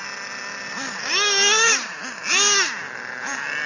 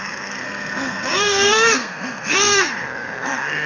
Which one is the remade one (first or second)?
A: second